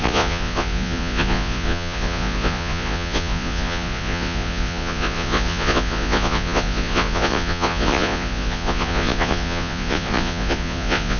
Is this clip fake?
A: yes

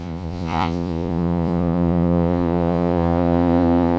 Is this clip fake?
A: yes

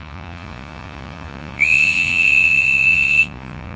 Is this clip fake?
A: yes